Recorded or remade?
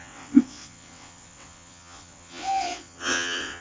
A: remade